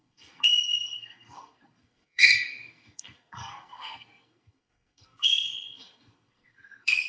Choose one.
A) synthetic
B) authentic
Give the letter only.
A